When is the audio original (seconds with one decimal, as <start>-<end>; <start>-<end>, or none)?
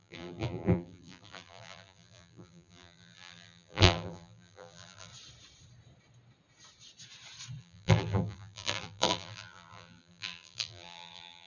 5.1-7.6